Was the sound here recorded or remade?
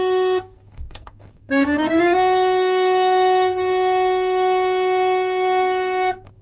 remade